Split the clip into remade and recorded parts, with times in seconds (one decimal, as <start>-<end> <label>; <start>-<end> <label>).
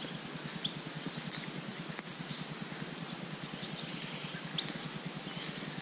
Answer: 0.0-5.8 recorded